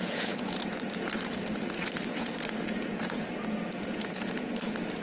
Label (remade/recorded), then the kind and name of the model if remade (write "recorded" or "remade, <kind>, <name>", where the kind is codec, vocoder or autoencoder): remade, vocoder, Vocos